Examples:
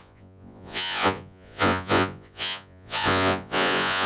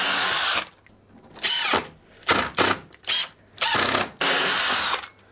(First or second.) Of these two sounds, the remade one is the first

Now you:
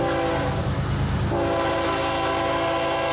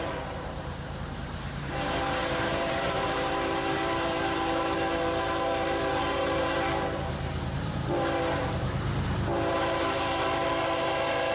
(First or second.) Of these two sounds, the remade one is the second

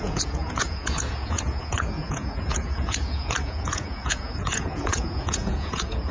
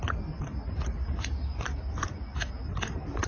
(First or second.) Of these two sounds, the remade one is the first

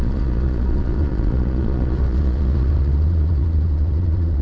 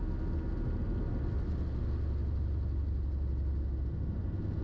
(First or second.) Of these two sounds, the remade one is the first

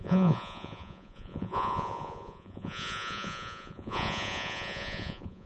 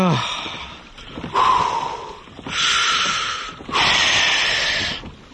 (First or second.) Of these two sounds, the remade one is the first